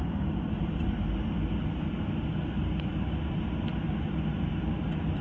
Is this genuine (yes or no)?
yes